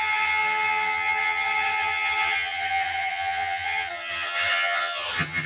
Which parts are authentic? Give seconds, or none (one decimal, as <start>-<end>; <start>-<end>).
none